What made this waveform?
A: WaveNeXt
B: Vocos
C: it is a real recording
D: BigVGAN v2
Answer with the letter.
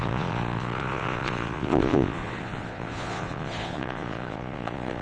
B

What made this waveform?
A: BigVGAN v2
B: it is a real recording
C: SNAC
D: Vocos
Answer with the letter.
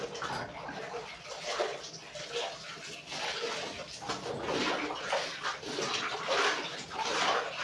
B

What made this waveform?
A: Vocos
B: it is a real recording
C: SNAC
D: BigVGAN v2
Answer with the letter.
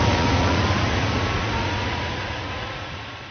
A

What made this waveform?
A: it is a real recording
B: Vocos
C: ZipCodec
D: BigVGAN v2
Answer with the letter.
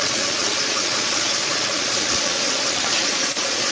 B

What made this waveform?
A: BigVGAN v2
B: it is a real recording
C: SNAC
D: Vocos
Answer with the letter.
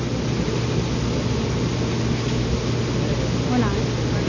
B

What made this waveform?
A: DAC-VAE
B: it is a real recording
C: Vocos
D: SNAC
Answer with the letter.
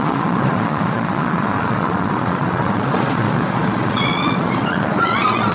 C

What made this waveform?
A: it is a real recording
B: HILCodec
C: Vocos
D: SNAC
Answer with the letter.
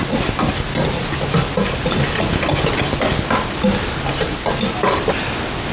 A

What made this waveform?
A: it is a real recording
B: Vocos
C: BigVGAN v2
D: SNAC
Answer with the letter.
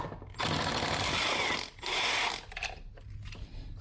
A